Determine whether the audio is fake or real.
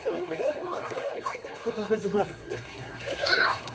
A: fake